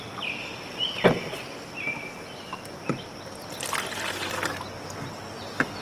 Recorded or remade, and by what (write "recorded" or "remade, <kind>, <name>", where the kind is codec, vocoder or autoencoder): recorded